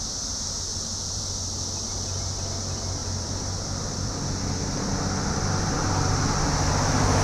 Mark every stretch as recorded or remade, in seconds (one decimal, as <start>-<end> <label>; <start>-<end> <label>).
0.0-0.7 recorded; 0.7-1.4 remade; 1.4-3.0 recorded; 3.0-4.1 remade; 4.1-7.2 recorded